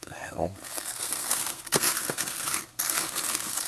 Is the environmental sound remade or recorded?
remade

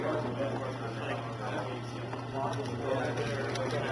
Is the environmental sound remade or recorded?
recorded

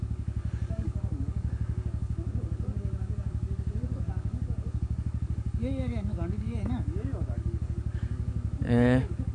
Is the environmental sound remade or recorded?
remade